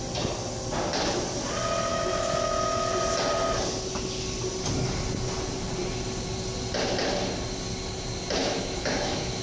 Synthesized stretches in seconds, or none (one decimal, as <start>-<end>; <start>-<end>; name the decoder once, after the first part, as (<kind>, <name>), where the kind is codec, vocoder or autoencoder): 1.9-2.9 (autoencoder, DAC-VAE); 8.4-9.4